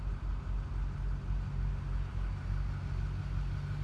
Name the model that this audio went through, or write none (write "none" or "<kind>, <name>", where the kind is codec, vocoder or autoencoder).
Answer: none